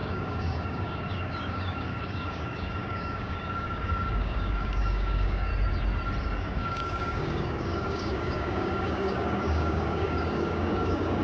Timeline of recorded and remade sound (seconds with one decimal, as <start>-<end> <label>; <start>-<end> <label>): 0.0-5.5 remade; 5.5-6.2 recorded; 6.2-11.2 remade